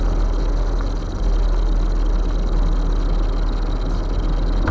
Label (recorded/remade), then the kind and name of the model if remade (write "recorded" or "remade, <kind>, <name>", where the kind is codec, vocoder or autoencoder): recorded